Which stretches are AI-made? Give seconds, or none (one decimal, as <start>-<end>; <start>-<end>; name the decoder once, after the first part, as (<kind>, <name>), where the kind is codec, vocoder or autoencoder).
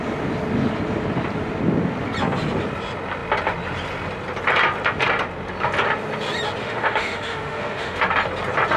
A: 6.6-8.0 (autoencoder, DAC-VAE)